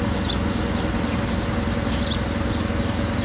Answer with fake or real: real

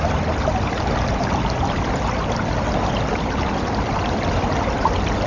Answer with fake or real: fake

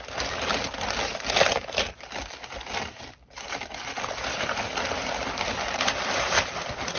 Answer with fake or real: fake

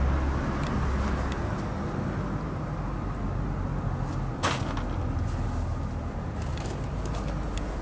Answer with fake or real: real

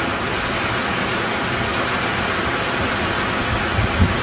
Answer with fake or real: real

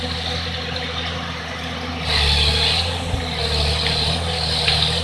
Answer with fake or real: real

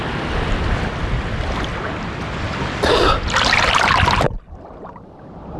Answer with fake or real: real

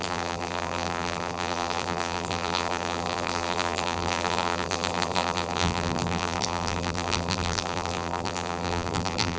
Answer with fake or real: fake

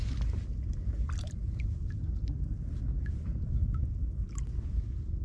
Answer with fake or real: real